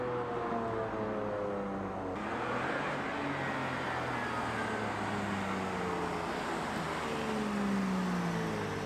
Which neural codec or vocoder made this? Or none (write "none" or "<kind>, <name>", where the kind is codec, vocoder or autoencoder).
none